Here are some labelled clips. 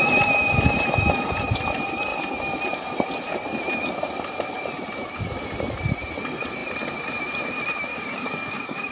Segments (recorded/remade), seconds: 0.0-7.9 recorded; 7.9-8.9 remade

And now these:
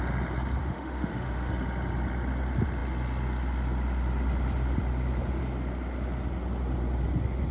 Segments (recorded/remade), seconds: 0.0-0.6 recorded; 0.6-1.5 remade; 1.5-7.5 recorded

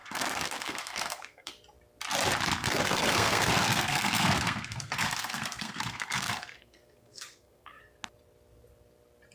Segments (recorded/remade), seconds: 0.0-1.5 remade; 1.5-2.6 recorded; 2.6-7.8 remade; 7.8-9.3 recorded

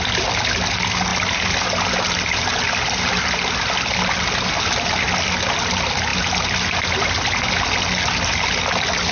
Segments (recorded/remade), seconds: 0.0-9.1 recorded